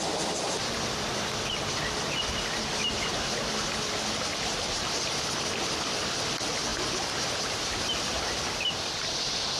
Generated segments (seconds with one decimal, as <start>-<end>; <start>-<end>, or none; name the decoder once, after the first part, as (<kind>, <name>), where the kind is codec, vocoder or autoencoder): none